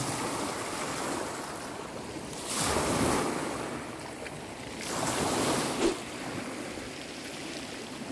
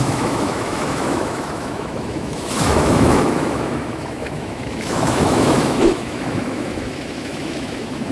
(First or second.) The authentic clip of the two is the first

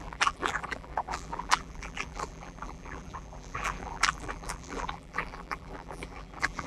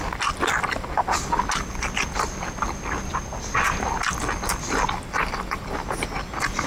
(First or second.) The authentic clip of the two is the second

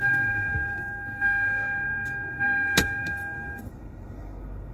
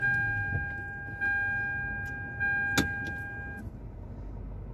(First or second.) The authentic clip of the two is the second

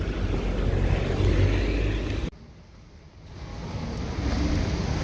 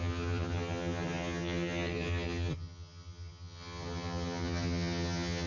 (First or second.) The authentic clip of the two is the first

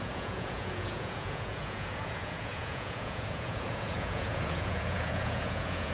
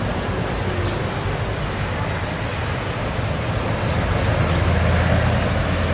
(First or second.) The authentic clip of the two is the second